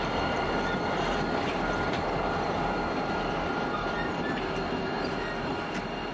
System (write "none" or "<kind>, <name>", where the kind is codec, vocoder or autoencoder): none